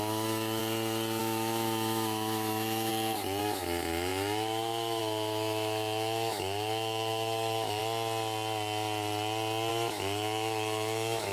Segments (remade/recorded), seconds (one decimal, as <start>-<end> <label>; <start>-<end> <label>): 0.0-0.6 remade; 0.6-1.2 recorded; 1.2-2.9 remade; 2.9-3.4 recorded; 3.4-7.8 remade; 7.8-9.7 recorded; 9.7-11.3 remade